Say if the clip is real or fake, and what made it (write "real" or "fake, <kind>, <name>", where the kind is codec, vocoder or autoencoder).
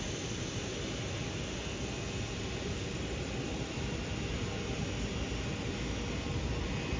real